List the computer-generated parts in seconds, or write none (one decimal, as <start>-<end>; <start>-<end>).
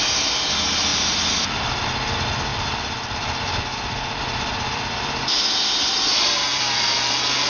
0.9-1.6; 2.5-7.0